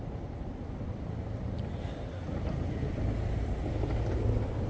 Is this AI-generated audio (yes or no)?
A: no